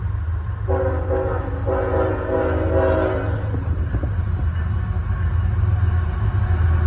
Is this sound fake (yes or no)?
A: no